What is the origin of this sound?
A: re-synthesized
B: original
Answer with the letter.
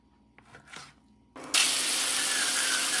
B